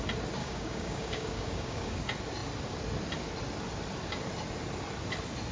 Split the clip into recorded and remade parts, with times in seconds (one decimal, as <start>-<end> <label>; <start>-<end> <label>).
0.0-0.4 recorded; 0.4-2.0 remade; 2.0-5.5 recorded